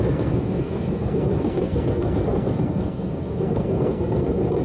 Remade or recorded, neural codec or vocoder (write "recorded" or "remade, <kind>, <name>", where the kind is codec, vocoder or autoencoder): remade, codec, SNAC